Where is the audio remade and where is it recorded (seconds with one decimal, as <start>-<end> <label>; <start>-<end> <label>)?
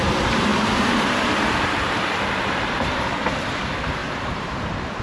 0.0-0.5 recorded; 0.5-3.2 remade; 3.2-4.0 recorded; 4.0-5.0 remade